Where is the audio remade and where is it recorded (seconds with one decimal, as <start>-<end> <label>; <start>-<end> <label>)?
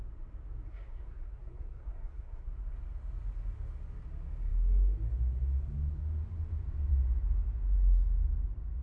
0.0-0.7 recorded; 0.7-2.5 remade; 2.5-8.8 recorded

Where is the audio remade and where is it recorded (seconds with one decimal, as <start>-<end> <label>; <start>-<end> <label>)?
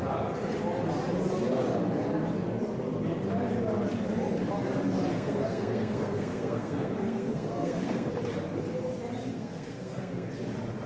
0.0-5.1 recorded; 5.1-8.1 remade; 8.1-9.3 recorded; 9.3-10.3 remade; 10.3-10.9 recorded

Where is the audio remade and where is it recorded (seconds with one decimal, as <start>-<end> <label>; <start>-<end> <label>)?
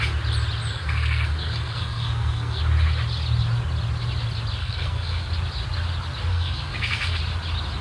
0.0-0.7 recorded; 0.7-2.6 remade; 2.6-4.6 recorded; 4.6-5.3 remade; 5.3-6.3 recorded; 6.3-7.2 remade; 7.2-7.8 recorded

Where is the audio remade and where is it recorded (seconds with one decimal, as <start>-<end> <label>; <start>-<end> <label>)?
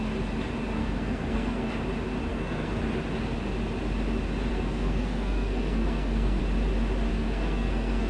0.0-0.8 recorded; 0.8-1.7 remade; 1.7-2.3 recorded; 2.3-2.8 remade; 2.8-4.5 recorded; 4.5-6.4 remade; 6.4-7.1 recorded; 7.1-8.1 remade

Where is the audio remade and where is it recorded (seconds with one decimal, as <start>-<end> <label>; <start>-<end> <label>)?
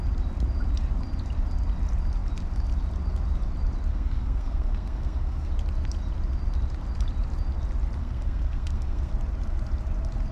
0.0-3.9 recorded; 3.9-5.5 remade; 5.5-8.0 recorded; 8.0-9.1 remade; 9.1-10.3 recorded